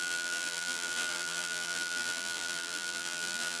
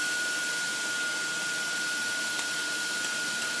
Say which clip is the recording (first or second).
second